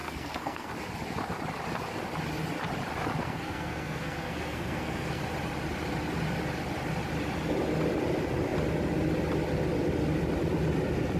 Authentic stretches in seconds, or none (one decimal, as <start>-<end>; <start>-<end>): 0.7-3.2; 5.2-11.2